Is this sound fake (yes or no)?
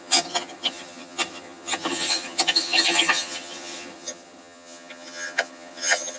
yes